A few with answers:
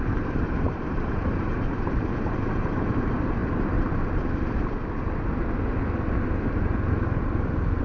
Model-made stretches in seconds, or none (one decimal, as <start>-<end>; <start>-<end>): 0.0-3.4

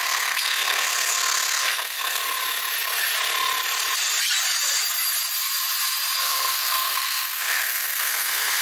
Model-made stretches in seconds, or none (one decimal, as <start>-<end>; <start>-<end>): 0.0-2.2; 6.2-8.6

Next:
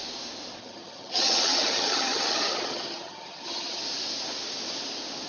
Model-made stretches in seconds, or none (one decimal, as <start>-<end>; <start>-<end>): 0.6-3.8

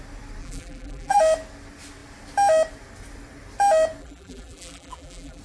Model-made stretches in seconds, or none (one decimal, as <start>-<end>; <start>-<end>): 0.4-1.2; 4.0-5.4

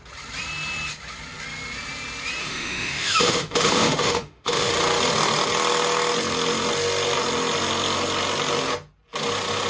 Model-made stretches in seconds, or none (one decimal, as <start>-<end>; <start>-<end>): 2.4-4.7